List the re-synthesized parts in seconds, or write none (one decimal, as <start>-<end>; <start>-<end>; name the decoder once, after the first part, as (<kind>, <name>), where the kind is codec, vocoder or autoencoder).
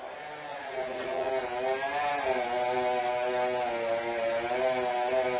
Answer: 0.5-1.3 (vocoder, Vocos)